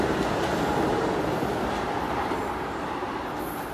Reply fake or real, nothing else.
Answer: fake